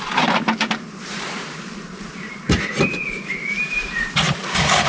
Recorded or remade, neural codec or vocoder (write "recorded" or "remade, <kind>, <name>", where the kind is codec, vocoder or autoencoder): remade, vocoder, BigVGAN v2